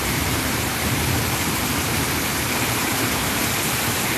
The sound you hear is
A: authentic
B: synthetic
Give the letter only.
B